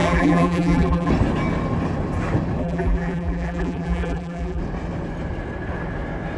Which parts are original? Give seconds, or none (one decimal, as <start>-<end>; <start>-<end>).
1.1-2.6; 4.6-6.4